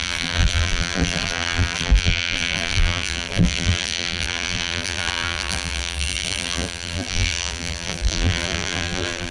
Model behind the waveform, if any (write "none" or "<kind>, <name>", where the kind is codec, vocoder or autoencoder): vocoder, BigVGAN v2